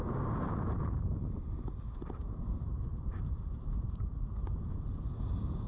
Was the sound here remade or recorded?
remade